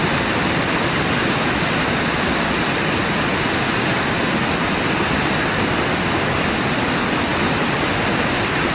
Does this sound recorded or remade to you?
recorded